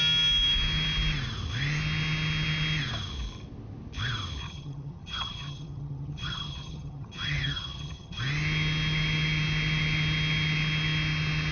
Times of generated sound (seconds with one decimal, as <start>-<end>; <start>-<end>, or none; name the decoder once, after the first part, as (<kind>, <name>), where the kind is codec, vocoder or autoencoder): 4.4-8.2 (vocoder, HiFi-GAN)